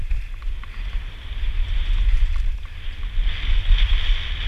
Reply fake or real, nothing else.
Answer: fake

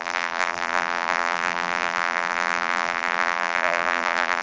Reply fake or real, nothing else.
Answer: fake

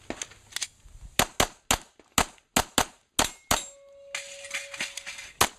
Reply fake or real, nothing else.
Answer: real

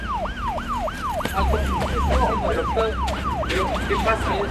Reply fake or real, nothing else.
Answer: fake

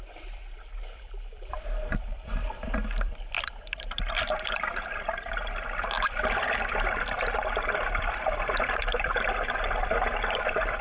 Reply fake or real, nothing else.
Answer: fake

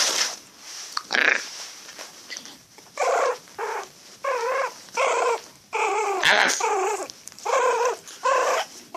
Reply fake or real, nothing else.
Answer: fake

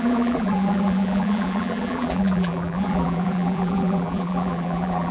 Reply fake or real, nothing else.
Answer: fake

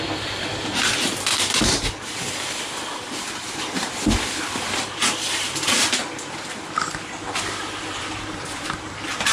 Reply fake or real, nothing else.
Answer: fake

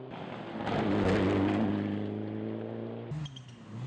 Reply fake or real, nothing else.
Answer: real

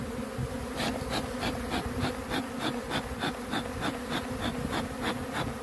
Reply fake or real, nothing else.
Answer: real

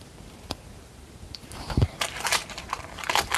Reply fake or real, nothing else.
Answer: fake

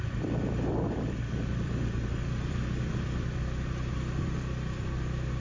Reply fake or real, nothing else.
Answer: fake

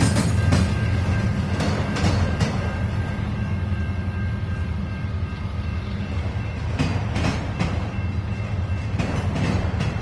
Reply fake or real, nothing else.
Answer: real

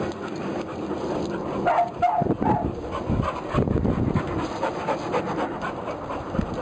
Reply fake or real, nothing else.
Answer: real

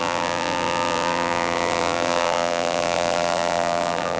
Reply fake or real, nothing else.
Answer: fake